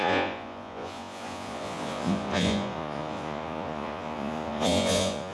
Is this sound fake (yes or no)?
yes